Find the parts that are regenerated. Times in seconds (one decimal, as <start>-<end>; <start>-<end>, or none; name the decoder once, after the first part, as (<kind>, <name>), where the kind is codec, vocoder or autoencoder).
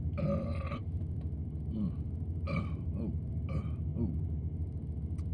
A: 0.0-3.9 (vocoder, BigVGAN v2)